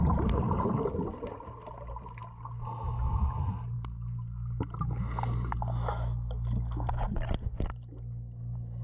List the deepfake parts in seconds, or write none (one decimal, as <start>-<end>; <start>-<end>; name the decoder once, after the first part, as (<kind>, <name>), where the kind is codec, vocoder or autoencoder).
none